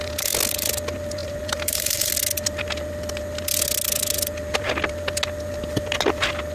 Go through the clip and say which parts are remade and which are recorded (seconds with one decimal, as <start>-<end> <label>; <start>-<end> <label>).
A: 0.0-1.2 recorded; 1.2-2.1 remade; 2.1-6.5 recorded